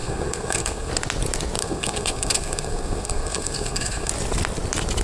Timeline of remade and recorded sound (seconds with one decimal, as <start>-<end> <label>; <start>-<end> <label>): 0.0-0.9 remade; 0.9-1.6 recorded; 1.6-4.1 remade; 4.1-5.0 recorded